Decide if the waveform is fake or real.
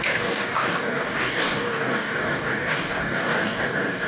fake